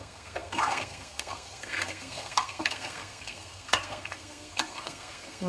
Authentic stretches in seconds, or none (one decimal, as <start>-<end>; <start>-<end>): none